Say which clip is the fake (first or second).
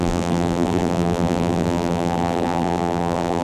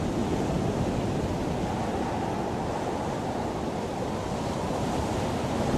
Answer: first